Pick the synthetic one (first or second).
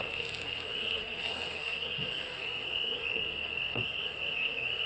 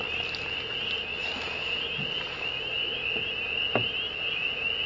first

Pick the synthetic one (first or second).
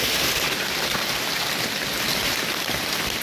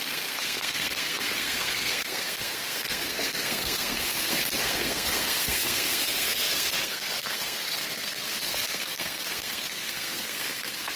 second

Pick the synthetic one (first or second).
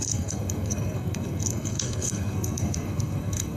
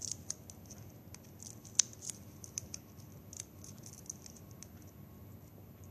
first